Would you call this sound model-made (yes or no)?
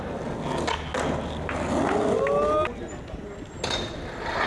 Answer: no